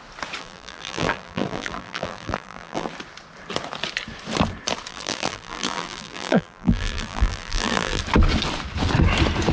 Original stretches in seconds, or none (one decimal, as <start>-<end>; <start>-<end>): 0.0-0.4; 2.9-4.9; 8.0-9.5